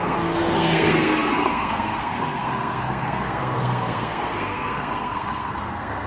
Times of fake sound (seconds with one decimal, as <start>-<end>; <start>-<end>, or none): 0.0-6.1

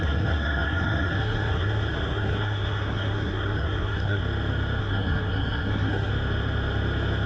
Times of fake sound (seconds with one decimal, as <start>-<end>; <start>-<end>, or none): 0.0-4.2; 4.8-6.1

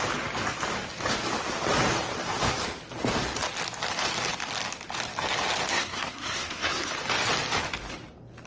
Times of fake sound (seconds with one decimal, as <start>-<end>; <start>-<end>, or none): 5.7-6.9

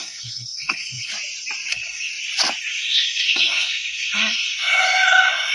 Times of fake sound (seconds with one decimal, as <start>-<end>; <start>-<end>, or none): 0.0-1.1; 1.7-2.1; 2.7-5.5

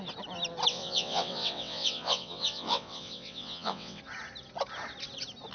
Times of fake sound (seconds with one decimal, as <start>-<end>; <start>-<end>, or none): 0.7-4.0

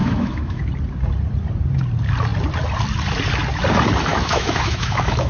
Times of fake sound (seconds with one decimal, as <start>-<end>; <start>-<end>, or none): 0.0-0.6; 4.1-5.3